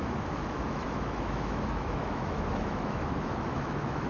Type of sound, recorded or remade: remade